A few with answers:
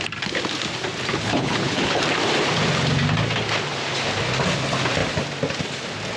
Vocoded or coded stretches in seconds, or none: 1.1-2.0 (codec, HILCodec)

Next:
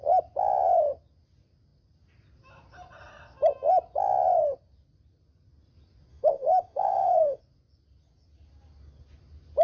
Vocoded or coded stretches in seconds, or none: 6.1-7.4 (autoencoder, DAC-VAE)

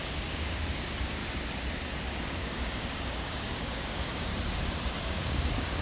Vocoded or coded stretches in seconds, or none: 0.0-1.2 (codec, DAC); 2.2-4.3; 5.1-5.8

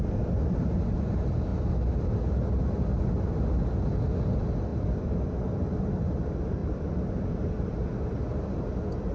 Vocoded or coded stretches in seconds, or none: 6.6-7.5 (vocoder, BigVGAN v2)

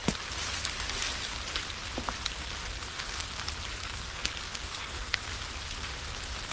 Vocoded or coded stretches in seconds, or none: 2.9-3.4 (codec, SNAC); 3.8-5.3